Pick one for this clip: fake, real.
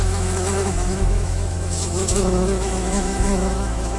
fake